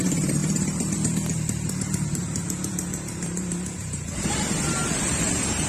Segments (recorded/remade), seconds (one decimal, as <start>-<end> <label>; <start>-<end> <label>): 0.0-5.7 remade

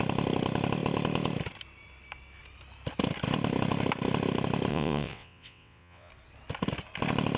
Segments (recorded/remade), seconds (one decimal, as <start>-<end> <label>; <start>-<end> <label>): 0.0-4.7 recorded; 4.7-6.1 remade; 6.1-7.4 recorded

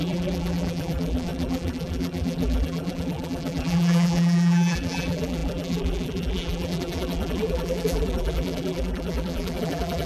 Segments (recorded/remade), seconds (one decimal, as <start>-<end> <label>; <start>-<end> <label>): 0.0-10.1 remade

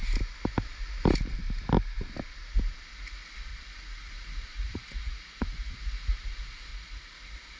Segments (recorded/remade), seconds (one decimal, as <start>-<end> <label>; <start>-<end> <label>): 0.0-3.5 recorded; 3.5-5.9 remade; 5.9-6.7 recorded; 6.7-7.6 remade

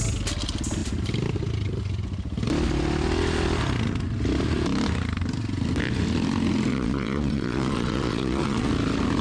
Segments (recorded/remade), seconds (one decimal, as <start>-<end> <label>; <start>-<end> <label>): 0.0-6.7 recorded; 6.7-8.7 remade; 8.7-9.2 recorded

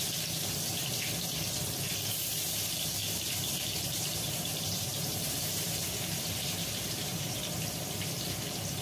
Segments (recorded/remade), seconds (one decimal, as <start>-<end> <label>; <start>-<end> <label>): 0.0-3.0 recorded; 3.0-7.4 remade; 7.4-8.8 recorded

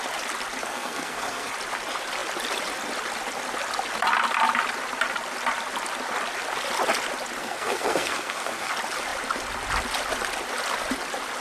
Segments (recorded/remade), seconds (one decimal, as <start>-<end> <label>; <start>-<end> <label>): 0.0-0.6 recorded; 0.6-1.5 remade; 1.5-7.4 recorded; 7.4-8.7 remade; 8.7-11.4 recorded